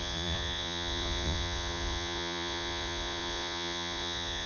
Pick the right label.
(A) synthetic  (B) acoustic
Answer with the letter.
A